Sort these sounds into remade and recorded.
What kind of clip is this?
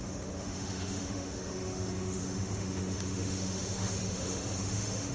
remade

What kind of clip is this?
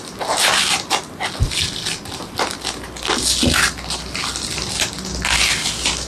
recorded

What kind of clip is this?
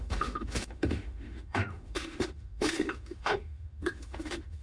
remade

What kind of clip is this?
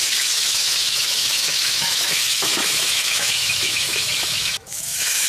remade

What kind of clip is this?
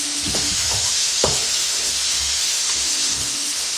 remade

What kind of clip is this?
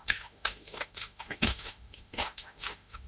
remade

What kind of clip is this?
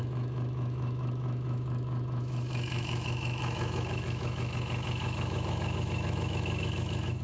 remade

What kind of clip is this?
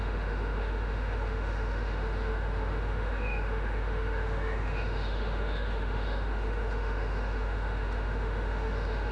remade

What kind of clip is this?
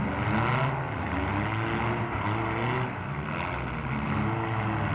recorded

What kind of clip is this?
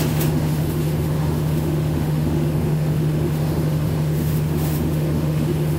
remade